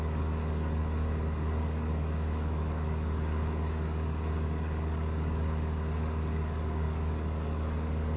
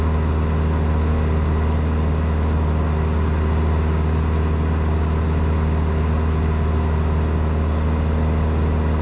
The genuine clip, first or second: second